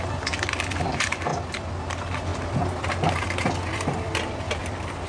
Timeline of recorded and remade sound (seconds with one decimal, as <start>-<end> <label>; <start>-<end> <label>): 0.0-1.3 remade; 1.3-1.9 recorded; 1.9-5.1 remade